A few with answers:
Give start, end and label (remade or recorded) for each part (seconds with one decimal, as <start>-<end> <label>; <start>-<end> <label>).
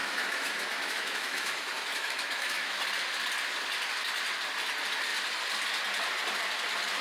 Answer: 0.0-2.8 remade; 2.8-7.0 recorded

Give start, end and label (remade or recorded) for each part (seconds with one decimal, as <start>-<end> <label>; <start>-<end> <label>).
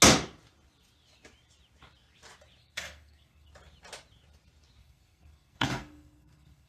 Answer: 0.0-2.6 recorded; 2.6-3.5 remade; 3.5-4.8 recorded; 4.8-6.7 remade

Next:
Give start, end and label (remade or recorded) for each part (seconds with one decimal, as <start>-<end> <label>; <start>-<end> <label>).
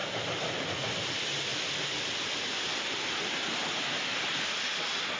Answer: 0.0-5.2 recorded